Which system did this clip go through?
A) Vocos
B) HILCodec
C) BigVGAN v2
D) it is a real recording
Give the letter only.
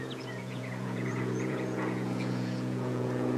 A